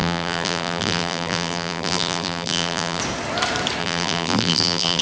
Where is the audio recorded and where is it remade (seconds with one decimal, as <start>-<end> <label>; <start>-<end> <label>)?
0.0-3.0 remade; 3.0-3.8 recorded; 3.8-5.0 remade

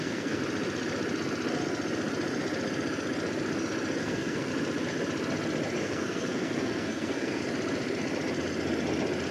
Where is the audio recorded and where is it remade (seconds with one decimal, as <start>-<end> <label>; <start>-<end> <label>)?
0.0-0.4 remade; 0.4-4.0 recorded; 4.0-4.5 remade; 4.5-5.8 recorded; 5.8-7.4 remade; 7.4-9.3 recorded

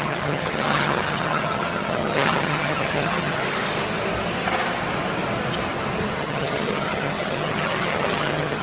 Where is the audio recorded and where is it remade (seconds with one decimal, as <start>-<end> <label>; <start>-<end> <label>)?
0.0-3.4 remade; 3.4-6.2 recorded; 6.2-8.6 remade

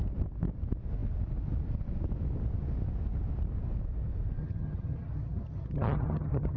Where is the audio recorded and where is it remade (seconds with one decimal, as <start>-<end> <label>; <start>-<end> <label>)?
0.0-4.4 recorded; 4.4-6.6 remade

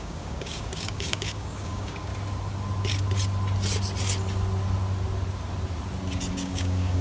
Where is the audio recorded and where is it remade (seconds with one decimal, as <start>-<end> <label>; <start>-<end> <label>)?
0.0-2.1 remade; 2.1-6.3 recorded; 6.3-7.0 remade

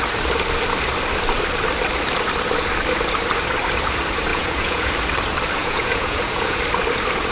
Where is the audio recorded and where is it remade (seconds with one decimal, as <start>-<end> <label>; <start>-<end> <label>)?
0.0-4.3 recorded; 4.3-4.9 remade; 4.9-5.6 recorded; 5.6-6.6 remade; 6.6-7.3 recorded

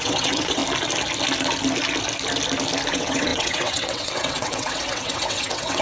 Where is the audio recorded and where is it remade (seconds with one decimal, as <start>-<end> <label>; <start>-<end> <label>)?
0.0-0.6 remade; 0.6-2.9 recorded; 2.9-5.8 remade

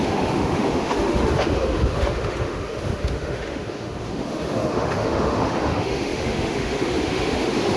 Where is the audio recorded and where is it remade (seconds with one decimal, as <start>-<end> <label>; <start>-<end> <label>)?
0.0-7.8 remade